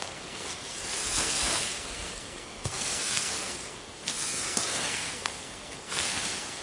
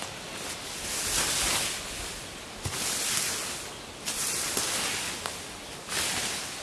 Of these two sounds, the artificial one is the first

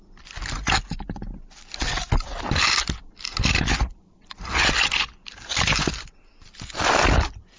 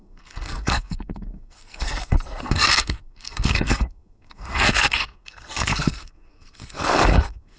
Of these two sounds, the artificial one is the second